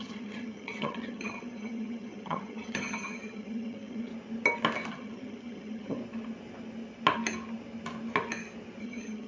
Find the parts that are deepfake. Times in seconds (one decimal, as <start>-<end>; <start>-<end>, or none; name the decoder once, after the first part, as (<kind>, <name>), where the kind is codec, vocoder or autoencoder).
0.0-4.1 (vocoder, HiFi-GAN); 4.9-6.0; 8.8-9.3